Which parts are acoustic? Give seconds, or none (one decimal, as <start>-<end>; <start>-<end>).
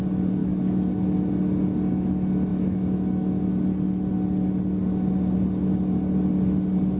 0.0-0.4; 1.3-2.5; 3.4-7.0